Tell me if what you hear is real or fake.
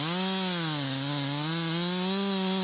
real